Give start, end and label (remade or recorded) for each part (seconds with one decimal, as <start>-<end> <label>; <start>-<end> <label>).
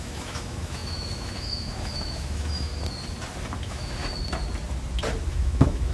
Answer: 0.0-2.7 remade; 2.7-3.6 recorded; 3.6-4.0 remade; 4.0-5.3 recorded; 5.3-5.9 remade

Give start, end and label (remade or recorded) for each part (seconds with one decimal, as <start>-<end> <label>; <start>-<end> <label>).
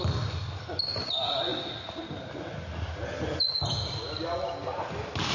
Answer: 0.0-5.3 recorded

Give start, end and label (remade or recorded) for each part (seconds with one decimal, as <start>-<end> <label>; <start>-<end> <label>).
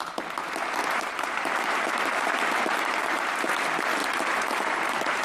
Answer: 0.0-0.8 recorded; 0.8-3.5 remade; 3.5-4.0 recorded; 4.0-5.2 remade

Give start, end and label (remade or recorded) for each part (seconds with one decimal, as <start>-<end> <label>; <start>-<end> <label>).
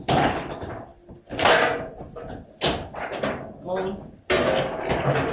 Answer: 0.0-5.3 recorded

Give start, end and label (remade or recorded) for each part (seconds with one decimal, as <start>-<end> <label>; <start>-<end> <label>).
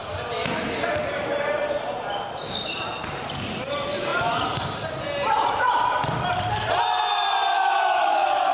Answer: 0.0-7.5 recorded; 7.5-8.5 remade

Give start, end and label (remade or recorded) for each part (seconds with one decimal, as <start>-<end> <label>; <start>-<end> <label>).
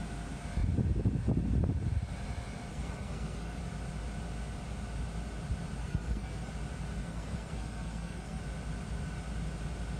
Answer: 0.0-2.7 recorded; 2.7-3.6 remade; 3.6-5.8 recorded; 5.8-6.5 remade; 6.5-7.0 recorded; 7.0-8.4 remade; 8.4-10.0 recorded